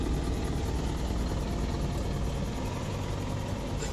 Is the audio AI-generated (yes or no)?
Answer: no